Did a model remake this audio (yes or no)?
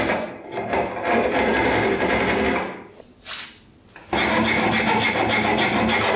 no